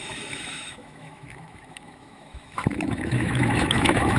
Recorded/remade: remade